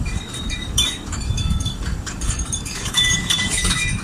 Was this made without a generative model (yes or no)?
no